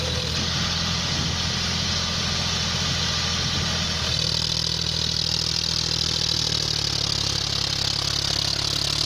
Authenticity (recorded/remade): recorded